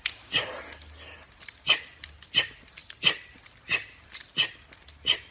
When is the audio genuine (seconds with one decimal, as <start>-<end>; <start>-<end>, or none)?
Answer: 0.0-5.3